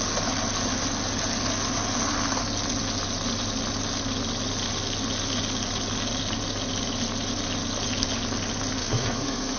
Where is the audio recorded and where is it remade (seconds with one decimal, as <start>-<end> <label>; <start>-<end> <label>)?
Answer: 0.0-8.8 recorded; 8.8-9.6 remade